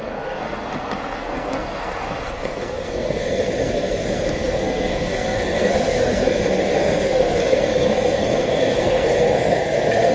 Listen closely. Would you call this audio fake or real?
fake